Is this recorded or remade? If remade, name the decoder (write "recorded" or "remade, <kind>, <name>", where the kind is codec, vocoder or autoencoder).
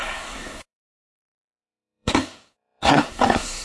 remade, codec, SNAC